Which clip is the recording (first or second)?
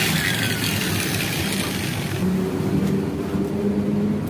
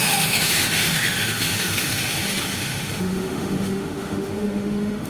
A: first